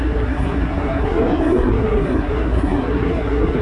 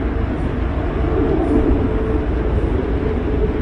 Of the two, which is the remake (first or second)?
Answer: first